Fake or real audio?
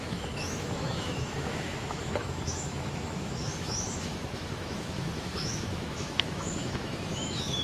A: fake